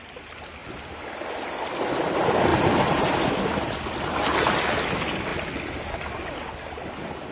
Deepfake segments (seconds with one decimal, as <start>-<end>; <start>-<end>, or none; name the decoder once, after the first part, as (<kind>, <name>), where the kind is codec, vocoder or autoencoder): 2.5-3.3 (vocoder, BigVGAN v2)